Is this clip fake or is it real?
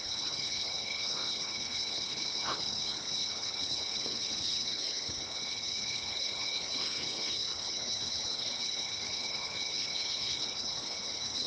fake